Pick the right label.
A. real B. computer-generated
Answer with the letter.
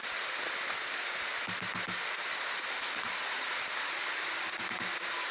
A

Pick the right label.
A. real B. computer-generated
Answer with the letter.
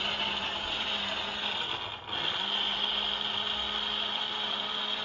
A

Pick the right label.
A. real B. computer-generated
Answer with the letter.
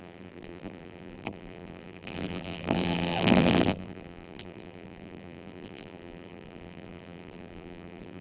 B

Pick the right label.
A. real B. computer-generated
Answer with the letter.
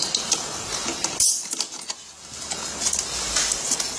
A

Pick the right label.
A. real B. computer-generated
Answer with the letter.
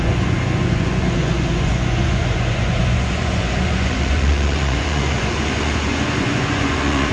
B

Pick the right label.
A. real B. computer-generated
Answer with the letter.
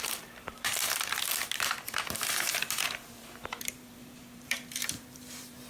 B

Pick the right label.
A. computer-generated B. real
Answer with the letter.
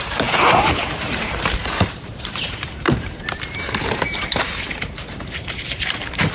A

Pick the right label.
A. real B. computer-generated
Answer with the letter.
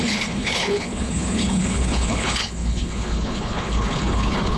B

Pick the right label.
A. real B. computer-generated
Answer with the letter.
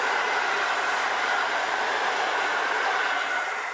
A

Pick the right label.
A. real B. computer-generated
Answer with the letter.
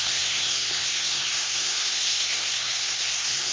B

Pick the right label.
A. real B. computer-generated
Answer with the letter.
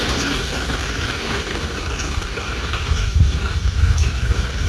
B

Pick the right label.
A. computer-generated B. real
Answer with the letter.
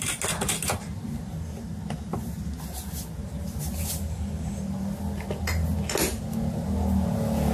B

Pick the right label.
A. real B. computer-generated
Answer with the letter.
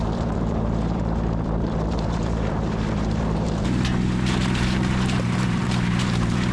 B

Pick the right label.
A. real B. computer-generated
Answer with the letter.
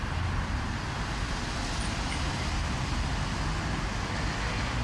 A